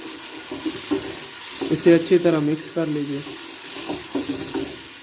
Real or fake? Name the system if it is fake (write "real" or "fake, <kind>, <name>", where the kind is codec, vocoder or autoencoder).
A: real